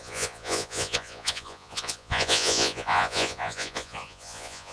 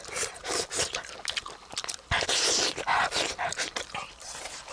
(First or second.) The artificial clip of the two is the first